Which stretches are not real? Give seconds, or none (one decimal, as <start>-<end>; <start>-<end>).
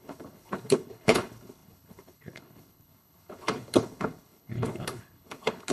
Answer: 0.0-5.7